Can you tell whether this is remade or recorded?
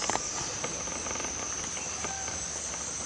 recorded